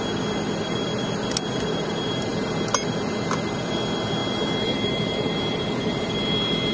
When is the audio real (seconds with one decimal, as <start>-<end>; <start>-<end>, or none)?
0.0-4.2; 6.1-6.7